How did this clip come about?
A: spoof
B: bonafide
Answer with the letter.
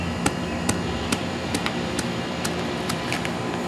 A